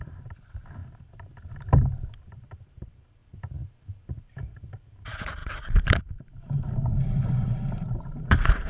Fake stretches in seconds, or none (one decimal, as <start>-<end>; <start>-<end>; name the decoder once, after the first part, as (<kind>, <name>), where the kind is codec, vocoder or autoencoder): 0.0-0.8 (vocoder, BigVGAN v2); 2.4-3.2; 4.2-8.7